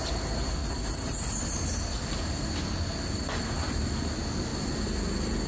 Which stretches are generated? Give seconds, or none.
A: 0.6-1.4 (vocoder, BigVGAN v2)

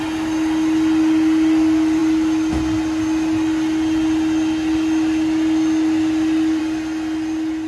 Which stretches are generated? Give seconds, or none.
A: none

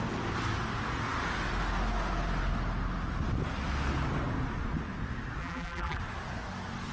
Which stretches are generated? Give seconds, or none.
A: 5.4-6.0 (vocoder, BigVGAN v2)